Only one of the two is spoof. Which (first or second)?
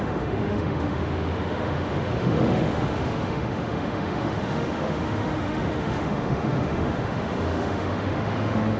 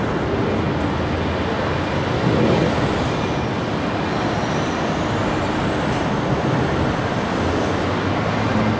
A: first